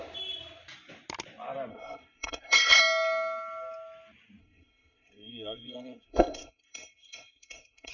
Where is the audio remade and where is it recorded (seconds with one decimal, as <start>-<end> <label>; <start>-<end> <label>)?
0.0-1.7 recorded; 1.7-2.8 remade; 2.8-4.4 recorded; 4.4-7.9 remade